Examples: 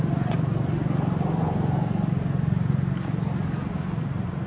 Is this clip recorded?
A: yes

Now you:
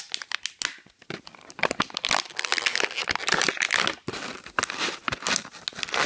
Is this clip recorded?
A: yes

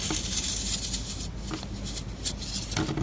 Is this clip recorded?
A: yes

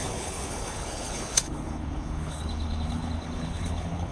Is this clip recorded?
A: no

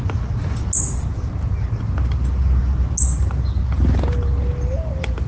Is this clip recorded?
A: yes